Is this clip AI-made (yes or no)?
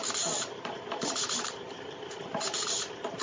yes